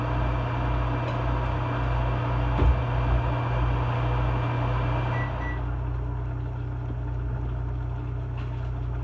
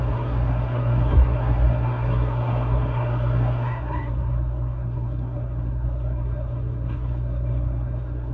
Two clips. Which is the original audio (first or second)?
first